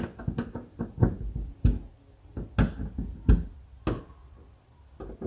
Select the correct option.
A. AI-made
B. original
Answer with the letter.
B